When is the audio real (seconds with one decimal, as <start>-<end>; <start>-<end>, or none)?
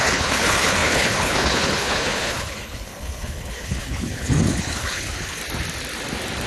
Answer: 5.4-6.5